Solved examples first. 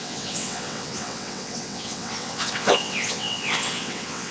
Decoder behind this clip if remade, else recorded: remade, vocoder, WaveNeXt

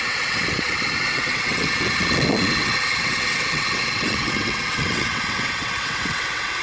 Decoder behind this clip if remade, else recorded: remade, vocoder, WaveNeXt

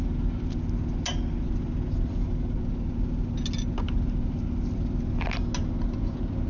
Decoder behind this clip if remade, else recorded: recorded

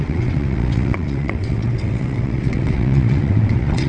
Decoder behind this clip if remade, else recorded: remade, vocoder, WaveNeXt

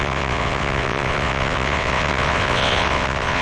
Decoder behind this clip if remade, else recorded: remade, vocoder, WaveNeXt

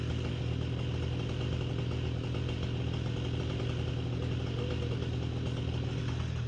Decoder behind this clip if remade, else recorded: recorded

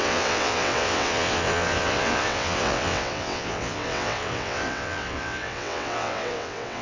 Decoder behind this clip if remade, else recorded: remade, vocoder, WaveNeXt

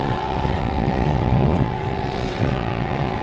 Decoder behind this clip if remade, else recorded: remade, vocoder, WaveNeXt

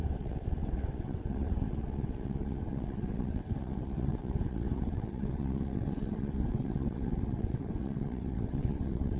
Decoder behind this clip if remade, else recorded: remade, vocoder, WaveNeXt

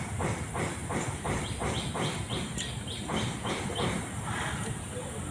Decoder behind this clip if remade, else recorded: recorded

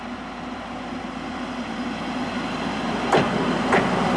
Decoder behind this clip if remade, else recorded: recorded